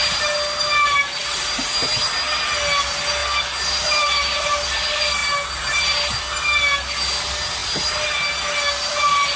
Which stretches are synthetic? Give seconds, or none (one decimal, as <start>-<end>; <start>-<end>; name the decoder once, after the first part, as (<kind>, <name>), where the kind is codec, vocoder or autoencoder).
none